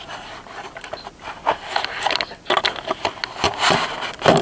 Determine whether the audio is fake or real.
real